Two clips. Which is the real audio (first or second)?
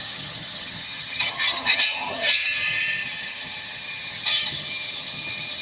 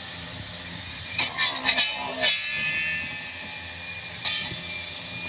second